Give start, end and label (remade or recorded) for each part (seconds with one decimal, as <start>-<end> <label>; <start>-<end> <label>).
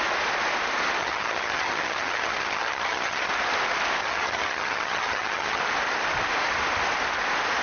0.0-1.0 recorded; 1.0-3.3 remade; 3.3-4.0 recorded; 4.0-5.6 remade; 5.6-7.6 recorded